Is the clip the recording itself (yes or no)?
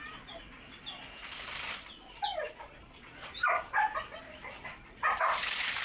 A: no